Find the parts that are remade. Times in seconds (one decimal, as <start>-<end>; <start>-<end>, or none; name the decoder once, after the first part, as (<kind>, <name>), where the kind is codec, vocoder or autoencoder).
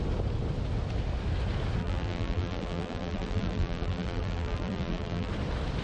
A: 1.8-5.3 (vocoder, BigVGAN v2)